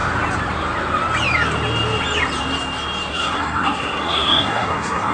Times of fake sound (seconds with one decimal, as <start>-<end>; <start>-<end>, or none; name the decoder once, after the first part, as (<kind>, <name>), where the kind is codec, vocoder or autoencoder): 3.1-5.1 (codec, SNAC)